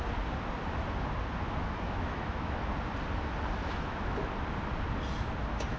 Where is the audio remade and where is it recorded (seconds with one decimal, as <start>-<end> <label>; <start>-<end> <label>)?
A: 0.0-1.6 recorded; 1.6-2.7 remade; 2.7-3.6 recorded; 3.6-4.3 remade; 4.3-5.8 recorded